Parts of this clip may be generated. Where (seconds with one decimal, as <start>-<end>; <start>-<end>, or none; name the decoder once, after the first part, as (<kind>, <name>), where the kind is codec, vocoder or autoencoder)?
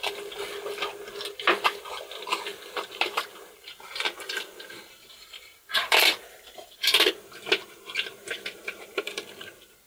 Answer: 2.5-7.1 (vocoder, BigVGAN v2); 8.2-9.4